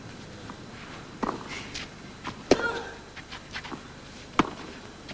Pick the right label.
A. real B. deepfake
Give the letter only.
A